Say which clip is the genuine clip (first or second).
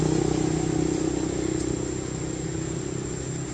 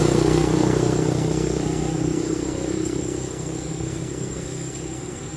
first